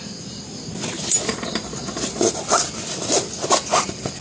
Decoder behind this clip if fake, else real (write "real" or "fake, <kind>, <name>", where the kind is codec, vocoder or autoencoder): real